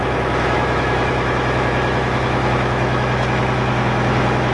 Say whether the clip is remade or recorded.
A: remade